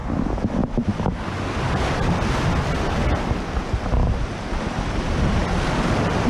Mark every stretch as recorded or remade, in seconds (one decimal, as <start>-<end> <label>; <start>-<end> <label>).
0.0-6.3 recorded